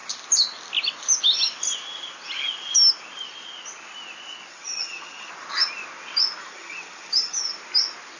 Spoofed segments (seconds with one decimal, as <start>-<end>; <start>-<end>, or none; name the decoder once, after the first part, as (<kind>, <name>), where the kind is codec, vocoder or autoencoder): 4.5-5.3 (vocoder, HiFi-GAN); 6.4-7.4